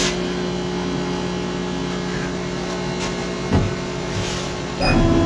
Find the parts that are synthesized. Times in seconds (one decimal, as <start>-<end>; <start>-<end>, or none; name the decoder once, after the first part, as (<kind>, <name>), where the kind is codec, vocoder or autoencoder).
none